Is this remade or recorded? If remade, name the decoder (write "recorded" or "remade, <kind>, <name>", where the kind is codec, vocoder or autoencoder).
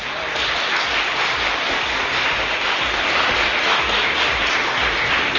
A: recorded